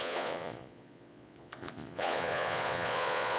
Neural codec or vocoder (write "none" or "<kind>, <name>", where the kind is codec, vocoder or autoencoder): vocoder, Vocos